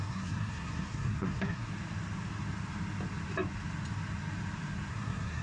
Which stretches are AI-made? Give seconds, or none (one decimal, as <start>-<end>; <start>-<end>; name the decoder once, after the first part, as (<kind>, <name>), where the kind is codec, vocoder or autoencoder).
0.0-1.7 (codec, SNAC); 4.9-5.4

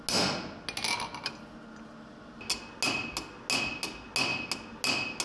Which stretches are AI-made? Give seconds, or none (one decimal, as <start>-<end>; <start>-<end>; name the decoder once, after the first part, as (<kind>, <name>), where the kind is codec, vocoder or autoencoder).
none

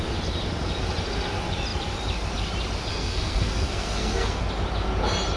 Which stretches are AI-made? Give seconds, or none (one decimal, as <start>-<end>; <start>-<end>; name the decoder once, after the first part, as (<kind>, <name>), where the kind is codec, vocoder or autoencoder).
2.9-4.4 (codec, SNAC)

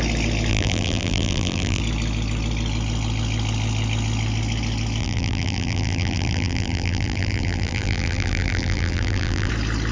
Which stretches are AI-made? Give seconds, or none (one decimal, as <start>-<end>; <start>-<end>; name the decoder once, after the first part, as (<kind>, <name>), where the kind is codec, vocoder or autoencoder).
0.5-1.8 (vocoder, BigVGAN v2); 5.0-9.5

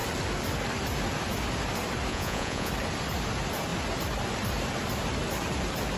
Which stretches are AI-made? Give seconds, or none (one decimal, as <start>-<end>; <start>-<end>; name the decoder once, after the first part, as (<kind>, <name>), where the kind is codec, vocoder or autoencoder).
2.1-2.7 (vocoder, Vocos)

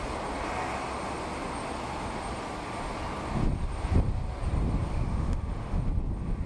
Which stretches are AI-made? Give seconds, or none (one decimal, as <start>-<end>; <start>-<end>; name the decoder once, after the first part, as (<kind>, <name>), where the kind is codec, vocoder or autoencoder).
4.9-5.8 (autoencoder, DAC-VAE)